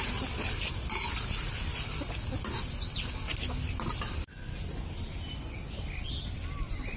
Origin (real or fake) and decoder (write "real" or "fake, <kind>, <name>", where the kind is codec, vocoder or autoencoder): real